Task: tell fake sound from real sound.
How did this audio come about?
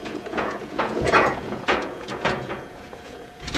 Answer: fake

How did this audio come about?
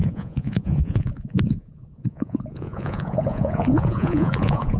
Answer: fake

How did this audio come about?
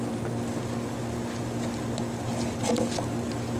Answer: real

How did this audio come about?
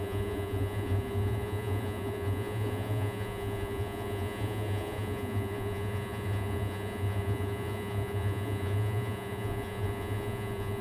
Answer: fake